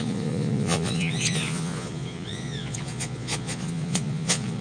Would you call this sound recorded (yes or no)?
no